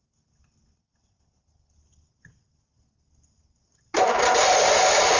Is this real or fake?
real